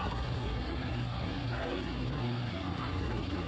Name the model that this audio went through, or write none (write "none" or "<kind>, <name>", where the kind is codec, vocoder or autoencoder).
codec, SNAC